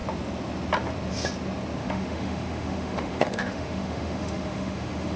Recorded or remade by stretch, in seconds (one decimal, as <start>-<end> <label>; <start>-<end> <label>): 0.0-1.8 recorded; 1.8-5.2 remade